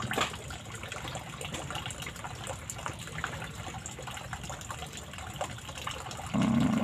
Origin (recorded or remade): recorded